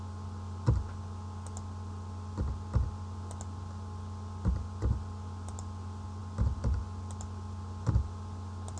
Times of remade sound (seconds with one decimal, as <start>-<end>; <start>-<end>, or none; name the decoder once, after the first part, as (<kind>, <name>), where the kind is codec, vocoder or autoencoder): none